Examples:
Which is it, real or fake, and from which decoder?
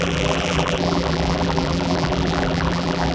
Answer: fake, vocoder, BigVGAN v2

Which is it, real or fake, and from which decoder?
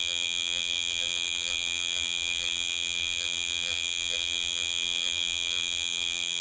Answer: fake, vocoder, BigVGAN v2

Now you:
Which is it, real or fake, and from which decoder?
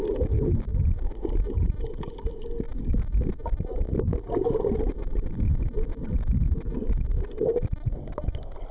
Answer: real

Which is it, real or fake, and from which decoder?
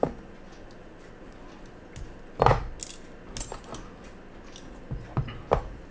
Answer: real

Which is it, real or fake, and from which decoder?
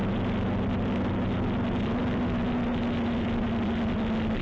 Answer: real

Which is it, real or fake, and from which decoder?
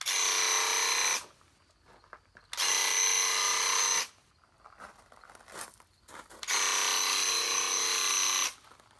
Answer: real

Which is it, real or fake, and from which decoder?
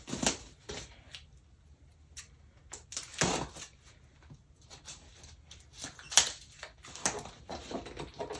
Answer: real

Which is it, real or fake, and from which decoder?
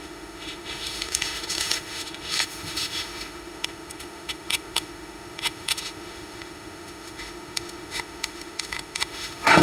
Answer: fake, autoencoder, DAC-VAE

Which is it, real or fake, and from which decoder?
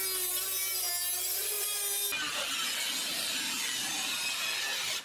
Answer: real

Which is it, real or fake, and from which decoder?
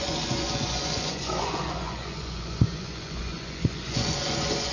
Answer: fake, vocoder, Vocos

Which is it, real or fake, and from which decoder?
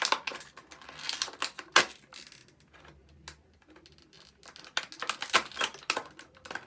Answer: real